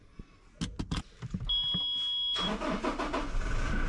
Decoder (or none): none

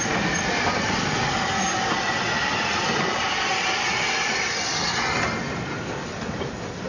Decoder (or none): none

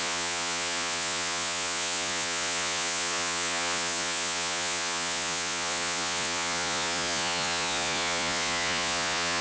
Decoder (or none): vocoder, Vocos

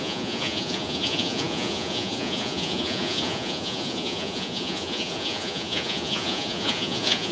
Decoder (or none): vocoder, Vocos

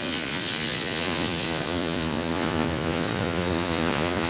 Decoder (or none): vocoder, Vocos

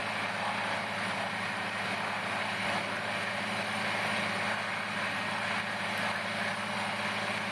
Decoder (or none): none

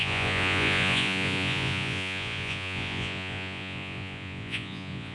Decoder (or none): vocoder, Vocos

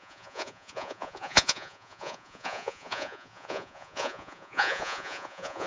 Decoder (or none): vocoder, Vocos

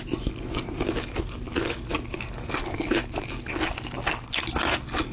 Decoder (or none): none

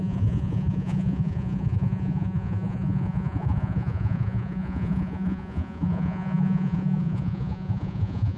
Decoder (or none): vocoder, Vocos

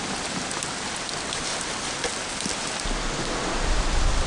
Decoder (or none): none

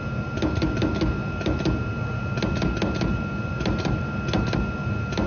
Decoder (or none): none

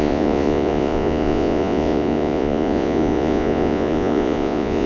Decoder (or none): vocoder, Vocos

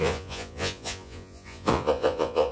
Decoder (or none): vocoder, Vocos